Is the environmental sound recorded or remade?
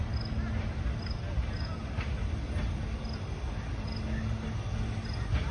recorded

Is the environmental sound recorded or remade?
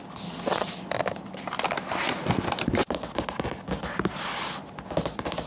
recorded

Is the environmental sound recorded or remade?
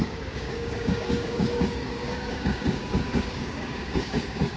remade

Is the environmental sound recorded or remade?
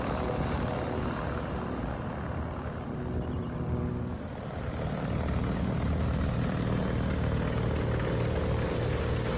recorded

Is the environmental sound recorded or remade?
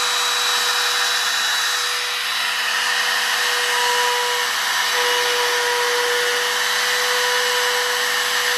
recorded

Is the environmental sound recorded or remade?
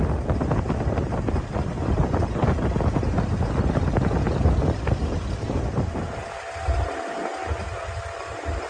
recorded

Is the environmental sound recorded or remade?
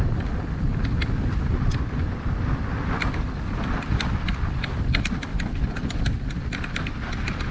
recorded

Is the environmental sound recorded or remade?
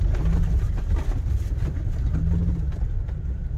recorded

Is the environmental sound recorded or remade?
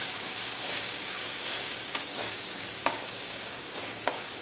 remade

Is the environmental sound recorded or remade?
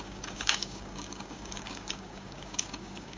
remade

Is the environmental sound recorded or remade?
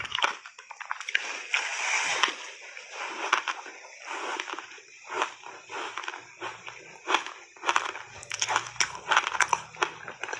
recorded